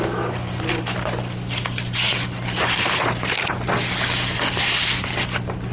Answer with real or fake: real